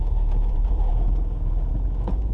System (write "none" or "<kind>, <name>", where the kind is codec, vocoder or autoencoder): vocoder, Vocos